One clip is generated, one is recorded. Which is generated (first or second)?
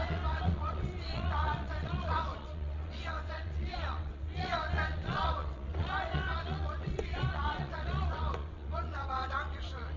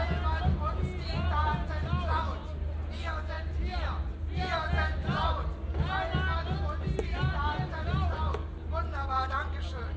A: first